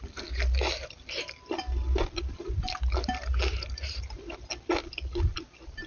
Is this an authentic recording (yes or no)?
yes